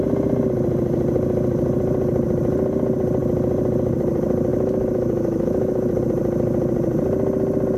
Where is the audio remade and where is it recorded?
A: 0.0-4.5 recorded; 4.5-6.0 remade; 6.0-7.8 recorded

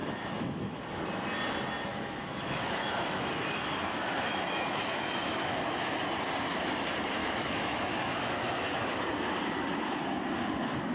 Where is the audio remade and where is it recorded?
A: 0.0-0.8 remade; 0.8-1.9 recorded; 1.9-6.0 remade; 6.0-7.2 recorded; 7.2-8.8 remade; 8.8-10.9 recorded

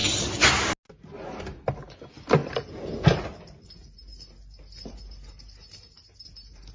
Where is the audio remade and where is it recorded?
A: 0.0-6.7 recorded

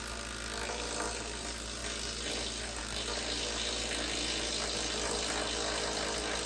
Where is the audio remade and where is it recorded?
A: 0.0-6.5 recorded

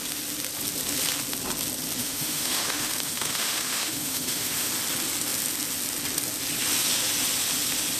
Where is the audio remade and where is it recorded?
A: 0.0-2.0 recorded; 2.0-4.7 remade; 4.7-8.0 recorded

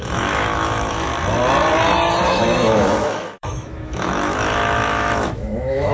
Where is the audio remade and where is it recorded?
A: 0.0-1.1 remade; 1.1-2.3 recorded; 2.3-5.9 remade